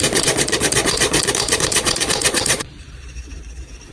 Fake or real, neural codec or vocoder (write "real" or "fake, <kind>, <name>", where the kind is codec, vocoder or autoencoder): fake, vocoder, Vocos